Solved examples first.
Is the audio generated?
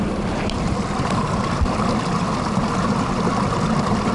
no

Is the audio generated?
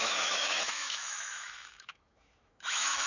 yes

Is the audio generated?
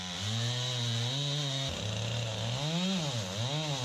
no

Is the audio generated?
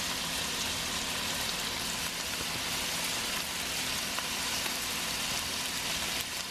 no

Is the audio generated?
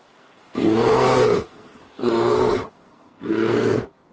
yes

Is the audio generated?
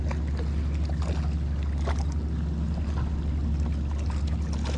no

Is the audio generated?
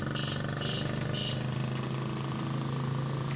no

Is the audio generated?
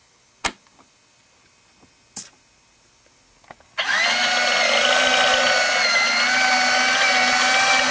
no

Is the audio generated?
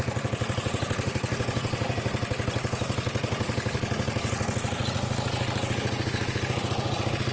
no